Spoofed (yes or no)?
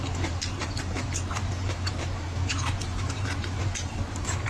yes